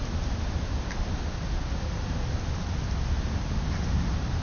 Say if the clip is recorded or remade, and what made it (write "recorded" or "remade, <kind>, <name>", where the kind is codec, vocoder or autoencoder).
recorded